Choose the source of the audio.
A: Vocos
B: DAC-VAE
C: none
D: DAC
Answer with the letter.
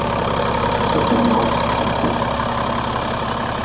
C